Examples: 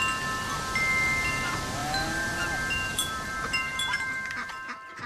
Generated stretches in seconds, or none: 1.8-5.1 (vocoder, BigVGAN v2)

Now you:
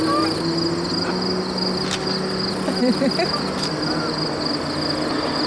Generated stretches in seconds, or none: 2.8-3.4 (vocoder, BigVGAN v2)

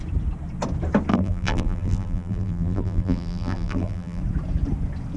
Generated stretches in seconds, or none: 1.1-4.2 (vocoder, BigVGAN v2)

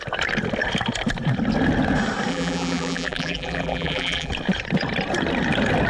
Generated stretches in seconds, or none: 2.3-4.3 (vocoder, BigVGAN v2)

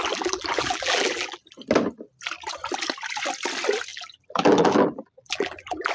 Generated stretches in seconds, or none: 0.0-1.4 (vocoder, BigVGAN v2); 3.9-5.9